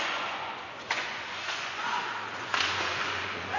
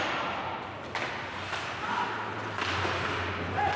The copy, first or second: first